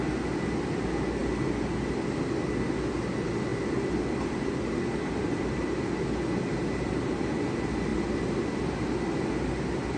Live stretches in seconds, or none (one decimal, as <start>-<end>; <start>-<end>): 0.0-10.0